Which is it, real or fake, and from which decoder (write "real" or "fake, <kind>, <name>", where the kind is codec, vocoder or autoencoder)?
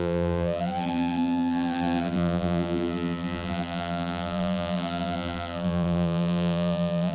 fake, vocoder, BigVGAN v2